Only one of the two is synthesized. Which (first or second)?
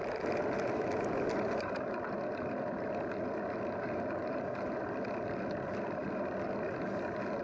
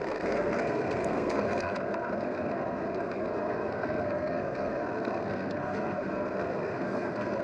second